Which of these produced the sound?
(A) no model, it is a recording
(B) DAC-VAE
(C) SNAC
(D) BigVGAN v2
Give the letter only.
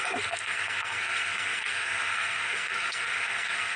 C